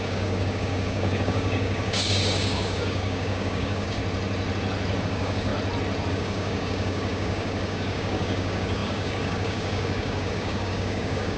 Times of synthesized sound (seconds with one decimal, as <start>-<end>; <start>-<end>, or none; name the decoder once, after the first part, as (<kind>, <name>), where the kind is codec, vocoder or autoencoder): 0.0-4.0 (codec, DAC); 5.0-5.5; 6.1-11.4